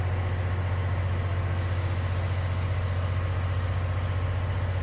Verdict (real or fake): real